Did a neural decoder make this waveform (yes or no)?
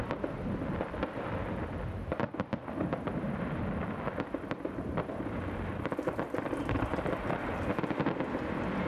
no